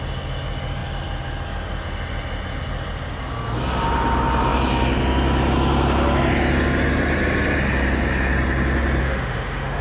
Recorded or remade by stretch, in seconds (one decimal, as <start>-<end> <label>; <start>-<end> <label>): 0.0-9.0 recorded; 9.0-9.8 remade